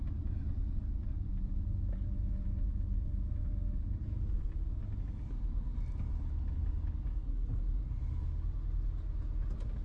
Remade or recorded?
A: recorded